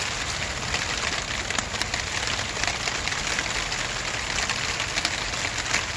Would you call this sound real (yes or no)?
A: yes